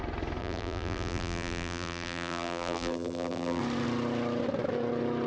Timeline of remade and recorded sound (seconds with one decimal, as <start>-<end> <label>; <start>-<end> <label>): 0.0-0.4 recorded; 0.4-3.6 remade; 3.6-5.3 recorded